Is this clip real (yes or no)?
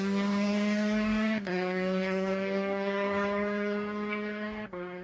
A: no